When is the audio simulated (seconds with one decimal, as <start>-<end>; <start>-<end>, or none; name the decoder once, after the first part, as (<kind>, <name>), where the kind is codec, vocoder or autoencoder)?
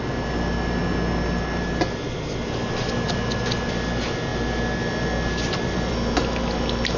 none